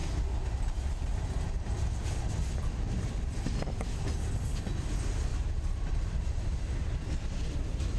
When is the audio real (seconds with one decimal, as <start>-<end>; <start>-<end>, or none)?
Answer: 0.0-5.3; 5.9-8.0